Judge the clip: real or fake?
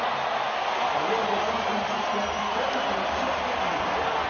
real